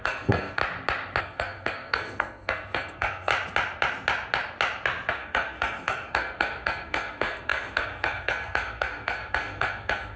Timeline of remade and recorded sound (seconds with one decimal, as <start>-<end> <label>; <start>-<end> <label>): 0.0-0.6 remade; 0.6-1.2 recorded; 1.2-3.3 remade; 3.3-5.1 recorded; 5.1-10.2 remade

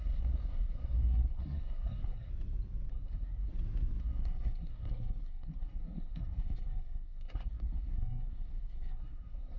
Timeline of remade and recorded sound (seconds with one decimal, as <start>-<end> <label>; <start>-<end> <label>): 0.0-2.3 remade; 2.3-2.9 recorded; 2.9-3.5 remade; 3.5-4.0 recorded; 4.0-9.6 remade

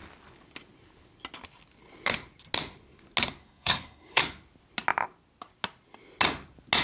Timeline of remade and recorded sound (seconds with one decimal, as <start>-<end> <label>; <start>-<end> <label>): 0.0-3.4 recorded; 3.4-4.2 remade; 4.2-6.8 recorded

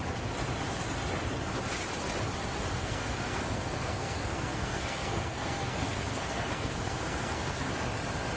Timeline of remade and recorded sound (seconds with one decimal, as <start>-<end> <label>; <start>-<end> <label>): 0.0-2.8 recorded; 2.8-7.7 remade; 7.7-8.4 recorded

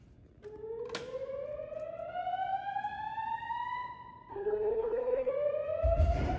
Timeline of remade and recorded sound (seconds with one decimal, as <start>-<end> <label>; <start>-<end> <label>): 0.0-4.3 recorded; 4.3-5.3 remade; 5.3-6.4 recorded

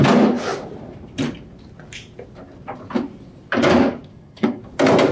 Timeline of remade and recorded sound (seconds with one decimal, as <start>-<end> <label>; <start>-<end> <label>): 0.0-4.1 recorded; 4.1-4.6 remade; 4.6-5.1 recorded